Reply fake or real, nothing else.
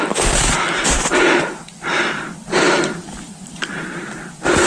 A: real